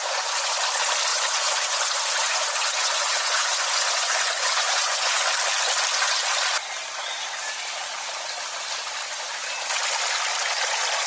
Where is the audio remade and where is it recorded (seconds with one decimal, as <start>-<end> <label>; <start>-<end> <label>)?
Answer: 0.0-0.6 remade; 0.6-1.1 recorded; 1.1-5.2 remade; 5.2-11.1 recorded